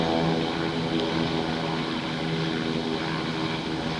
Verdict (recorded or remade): recorded